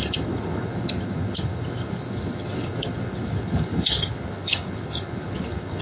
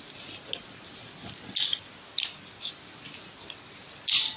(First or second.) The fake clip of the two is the first